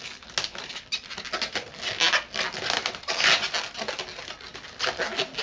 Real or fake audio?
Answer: real